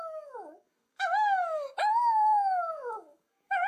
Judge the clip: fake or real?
fake